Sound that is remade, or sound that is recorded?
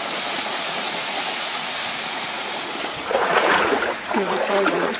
remade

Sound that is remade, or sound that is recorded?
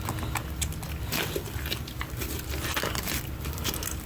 recorded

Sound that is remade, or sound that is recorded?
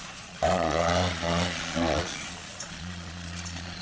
remade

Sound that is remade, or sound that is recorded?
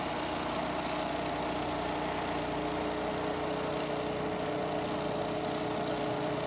recorded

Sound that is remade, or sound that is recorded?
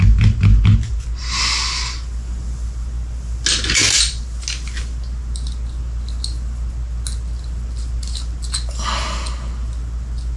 recorded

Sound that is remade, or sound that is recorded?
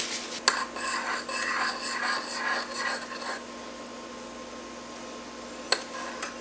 recorded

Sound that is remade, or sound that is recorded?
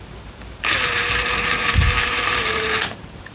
remade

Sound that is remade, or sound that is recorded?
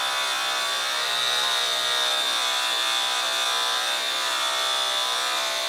recorded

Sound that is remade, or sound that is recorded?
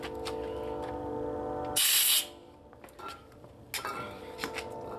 recorded